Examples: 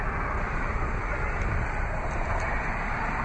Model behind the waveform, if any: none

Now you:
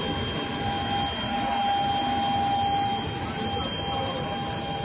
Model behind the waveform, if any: none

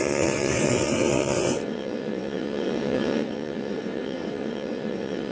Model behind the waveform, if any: vocoder, WaveNeXt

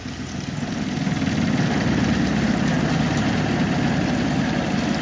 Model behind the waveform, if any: none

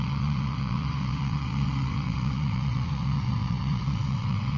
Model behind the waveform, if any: vocoder, WaveNeXt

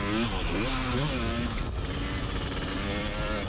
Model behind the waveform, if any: none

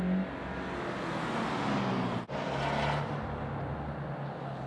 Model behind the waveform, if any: none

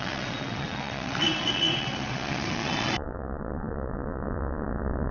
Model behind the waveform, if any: vocoder, WaveNeXt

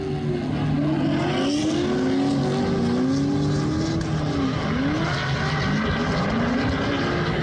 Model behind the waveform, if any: none